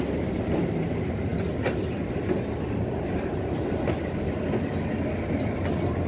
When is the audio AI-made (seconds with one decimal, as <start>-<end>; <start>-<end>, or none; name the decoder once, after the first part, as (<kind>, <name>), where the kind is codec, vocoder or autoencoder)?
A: none